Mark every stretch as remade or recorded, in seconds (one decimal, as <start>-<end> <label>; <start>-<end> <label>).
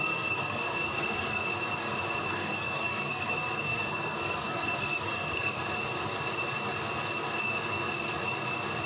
0.0-1.4 remade; 1.4-2.2 recorded; 2.2-5.6 remade; 5.6-8.9 recorded